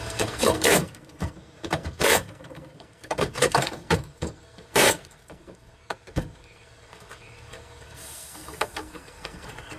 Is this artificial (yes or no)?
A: yes